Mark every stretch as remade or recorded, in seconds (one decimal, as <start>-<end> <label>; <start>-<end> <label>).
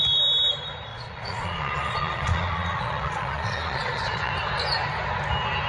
0.0-0.9 recorded; 0.9-4.3 remade; 4.3-5.7 recorded